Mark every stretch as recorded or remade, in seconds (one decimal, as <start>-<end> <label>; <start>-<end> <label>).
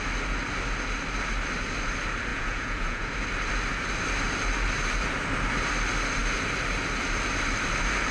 0.0-2.3 recorded; 2.3-3.1 remade; 3.1-8.1 recorded